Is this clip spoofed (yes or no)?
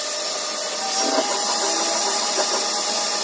no